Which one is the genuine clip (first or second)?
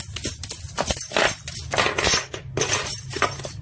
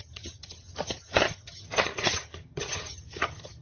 first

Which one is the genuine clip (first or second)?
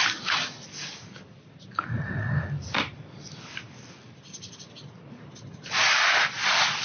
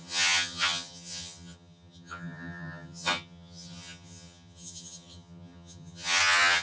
first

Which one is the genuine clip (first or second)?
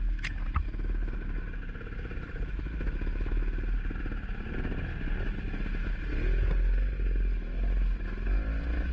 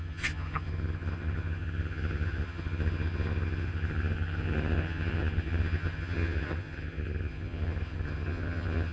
first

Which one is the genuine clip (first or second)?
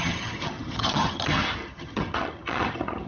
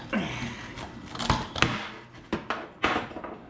second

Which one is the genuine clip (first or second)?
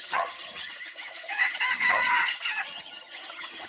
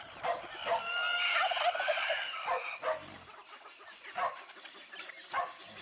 second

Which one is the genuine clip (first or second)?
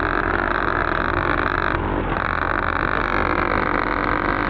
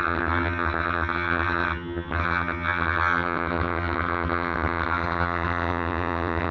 first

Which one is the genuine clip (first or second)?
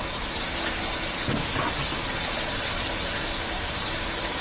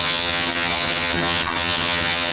first